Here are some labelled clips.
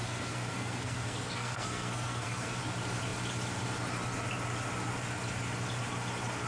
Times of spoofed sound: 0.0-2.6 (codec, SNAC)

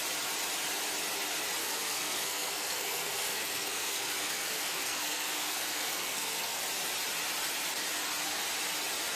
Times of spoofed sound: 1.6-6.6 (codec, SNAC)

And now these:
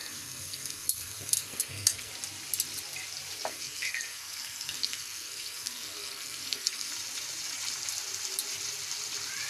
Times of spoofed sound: 0.0-2.1 (codec, SNAC); 3.5-6.9

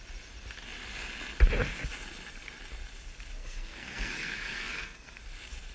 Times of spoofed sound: 3.4-5.2 (codec, SNAC)

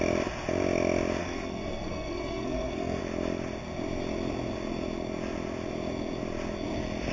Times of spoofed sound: 1.2-3.0 (codec, SNAC)

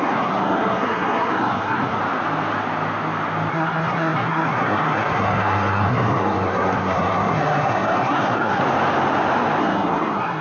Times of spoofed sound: 0.0-2.0 (codec, SNAC); 3.5-8.6; 9.6-10.4

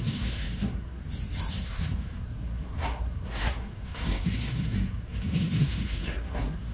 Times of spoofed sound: 0.0-1.0 (codec, SNAC); 1.5-6.7